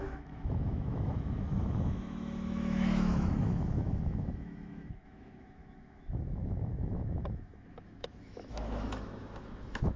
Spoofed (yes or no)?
yes